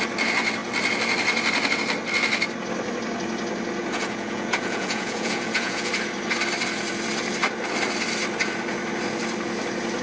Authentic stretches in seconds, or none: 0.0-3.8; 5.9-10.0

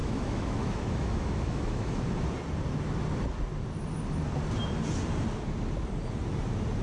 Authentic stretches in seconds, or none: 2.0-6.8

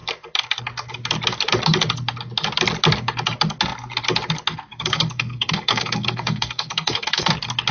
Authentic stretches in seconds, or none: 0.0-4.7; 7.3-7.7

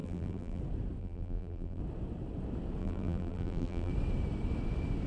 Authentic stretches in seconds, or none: 0.6-1.0; 1.8-2.8; 3.9-5.1